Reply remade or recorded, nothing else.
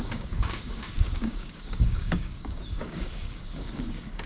remade